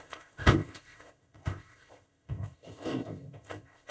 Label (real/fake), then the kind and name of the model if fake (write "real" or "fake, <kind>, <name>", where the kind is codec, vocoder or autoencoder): fake, codec, ZipCodec